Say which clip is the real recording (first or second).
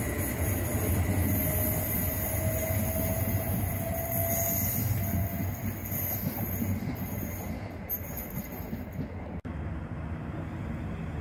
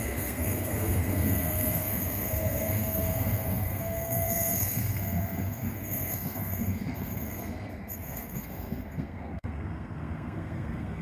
first